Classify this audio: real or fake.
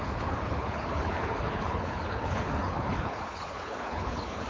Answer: fake